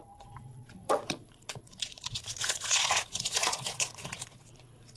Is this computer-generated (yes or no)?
yes